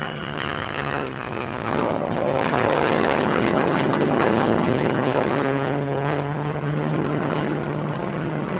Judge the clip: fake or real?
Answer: fake